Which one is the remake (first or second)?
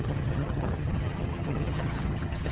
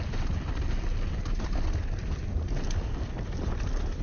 first